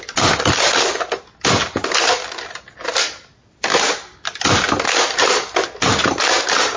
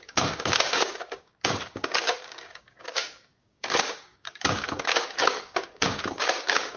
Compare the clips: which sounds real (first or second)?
first